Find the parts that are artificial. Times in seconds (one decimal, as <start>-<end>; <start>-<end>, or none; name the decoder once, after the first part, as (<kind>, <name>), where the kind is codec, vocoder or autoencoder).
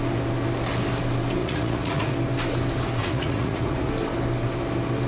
1.4-2.1 (vocoder, Vocos); 3.0-3.9